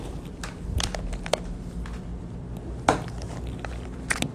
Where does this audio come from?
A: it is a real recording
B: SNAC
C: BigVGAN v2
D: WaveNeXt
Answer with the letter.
C